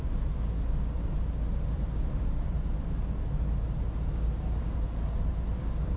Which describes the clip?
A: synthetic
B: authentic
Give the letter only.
B